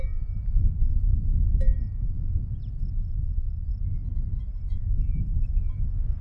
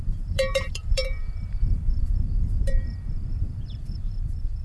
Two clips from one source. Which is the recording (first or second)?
first